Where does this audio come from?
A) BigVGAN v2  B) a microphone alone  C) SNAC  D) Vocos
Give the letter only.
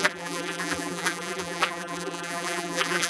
A